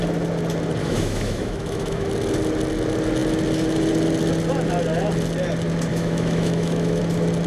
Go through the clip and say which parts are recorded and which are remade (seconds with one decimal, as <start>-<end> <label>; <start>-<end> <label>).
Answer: 0.0-0.8 recorded; 0.8-2.1 remade; 2.1-5.9 recorded; 5.9-7.0 remade; 7.0-7.5 recorded